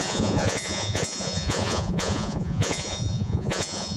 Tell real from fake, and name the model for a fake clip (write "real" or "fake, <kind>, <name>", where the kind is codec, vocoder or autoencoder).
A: fake, vocoder, Vocos